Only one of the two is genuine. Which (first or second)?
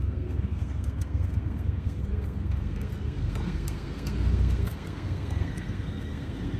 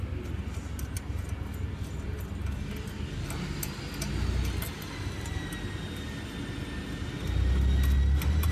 second